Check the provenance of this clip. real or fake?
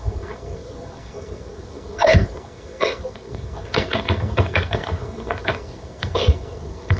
fake